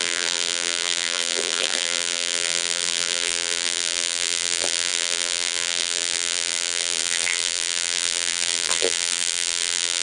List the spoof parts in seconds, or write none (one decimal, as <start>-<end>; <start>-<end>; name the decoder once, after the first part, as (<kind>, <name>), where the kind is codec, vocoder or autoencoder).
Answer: 0.0-10.0 (vocoder, BigVGAN v2)